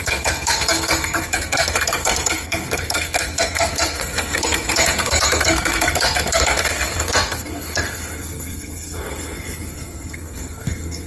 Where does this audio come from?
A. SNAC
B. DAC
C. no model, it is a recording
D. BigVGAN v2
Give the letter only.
A